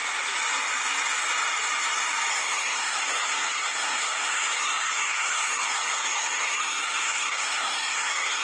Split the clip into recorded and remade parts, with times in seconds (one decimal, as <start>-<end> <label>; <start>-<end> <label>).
0.0-2.3 recorded; 2.3-8.4 remade